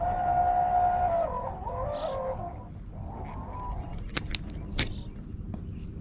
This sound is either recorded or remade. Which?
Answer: recorded